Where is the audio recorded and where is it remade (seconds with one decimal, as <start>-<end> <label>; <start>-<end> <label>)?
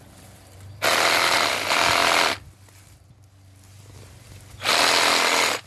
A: 0.0-5.7 recorded